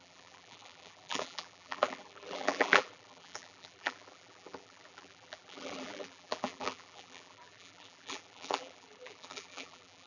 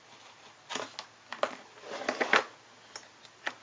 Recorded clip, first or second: second